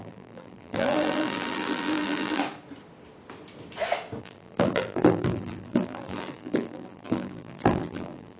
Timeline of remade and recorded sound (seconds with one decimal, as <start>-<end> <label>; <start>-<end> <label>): 0.0-2.4 remade; 2.4-4.2 recorded; 4.2-8.4 remade